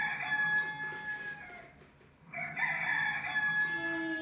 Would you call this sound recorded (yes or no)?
yes